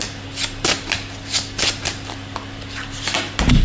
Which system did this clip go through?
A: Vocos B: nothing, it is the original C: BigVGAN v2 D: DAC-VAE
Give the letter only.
B